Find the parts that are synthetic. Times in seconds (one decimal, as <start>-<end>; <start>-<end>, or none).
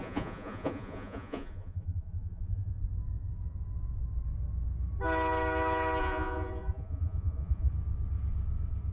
0.0-2.8; 6.0-7.7